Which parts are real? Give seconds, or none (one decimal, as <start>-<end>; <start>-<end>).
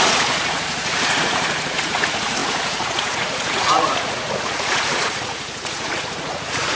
none